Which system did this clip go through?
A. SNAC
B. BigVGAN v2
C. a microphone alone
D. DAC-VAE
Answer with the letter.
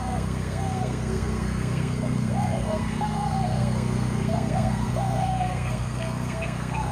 A